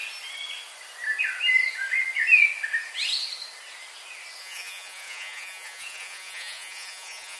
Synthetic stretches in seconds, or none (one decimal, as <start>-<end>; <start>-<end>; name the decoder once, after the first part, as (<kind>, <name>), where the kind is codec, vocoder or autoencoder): 4.4-7.4 (vocoder, Vocos)